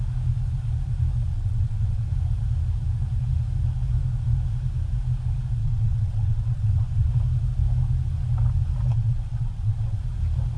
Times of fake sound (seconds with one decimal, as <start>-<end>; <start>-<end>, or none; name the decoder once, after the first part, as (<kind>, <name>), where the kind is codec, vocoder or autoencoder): 1.3-2.1 (vocoder, WaveNeXt); 5.6-7.1; 8.9-10.0